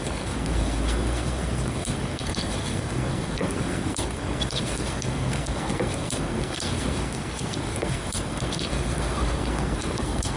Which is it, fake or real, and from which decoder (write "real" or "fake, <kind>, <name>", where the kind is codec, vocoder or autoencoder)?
fake, codec, SNAC